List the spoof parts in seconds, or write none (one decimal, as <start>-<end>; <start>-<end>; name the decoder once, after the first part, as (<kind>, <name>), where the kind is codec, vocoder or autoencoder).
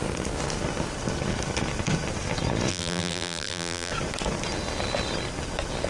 2.7-3.9 (vocoder, BigVGAN v2)